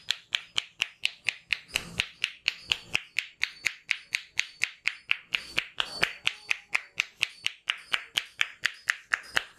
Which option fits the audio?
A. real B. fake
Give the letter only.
A